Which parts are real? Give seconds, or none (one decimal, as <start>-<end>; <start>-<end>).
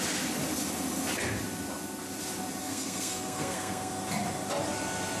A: 0.0-2.6; 3.9-5.2